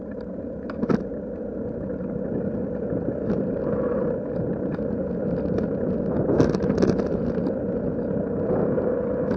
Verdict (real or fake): real